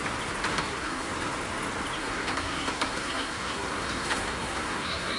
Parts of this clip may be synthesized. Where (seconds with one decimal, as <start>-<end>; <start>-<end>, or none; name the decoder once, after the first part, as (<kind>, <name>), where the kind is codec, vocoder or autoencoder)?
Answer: 0.5-1.1 (codec, SNAC); 2.0-5.2